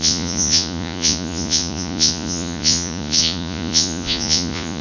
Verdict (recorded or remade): remade